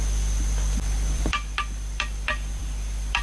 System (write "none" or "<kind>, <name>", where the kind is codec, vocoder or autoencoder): vocoder, BigVGAN v2